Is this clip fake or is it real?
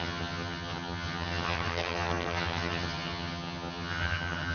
fake